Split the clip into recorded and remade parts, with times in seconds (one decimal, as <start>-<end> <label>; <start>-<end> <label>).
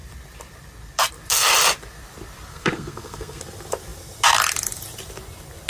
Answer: 0.0-2.5 recorded; 2.5-3.4 remade; 3.4-5.7 recorded